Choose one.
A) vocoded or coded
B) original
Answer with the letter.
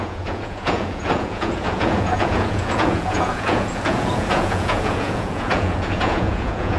A